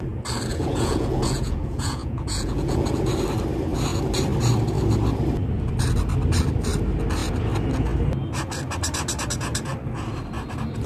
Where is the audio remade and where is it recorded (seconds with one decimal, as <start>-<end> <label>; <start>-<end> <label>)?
0.0-0.5 recorded; 0.5-3.0 remade; 3.0-10.9 recorded